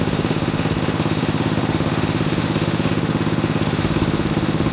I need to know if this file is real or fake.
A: fake